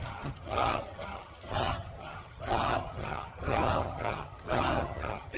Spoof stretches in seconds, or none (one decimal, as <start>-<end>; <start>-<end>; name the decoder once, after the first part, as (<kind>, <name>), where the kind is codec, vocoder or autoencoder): 0.0-5.4 (vocoder, HiFi-GAN)